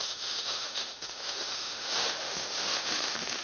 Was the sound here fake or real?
fake